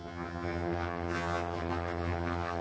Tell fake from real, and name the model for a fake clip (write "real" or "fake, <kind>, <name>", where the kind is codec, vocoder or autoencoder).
fake, vocoder, HiFi-GAN